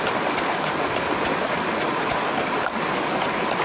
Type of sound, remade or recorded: recorded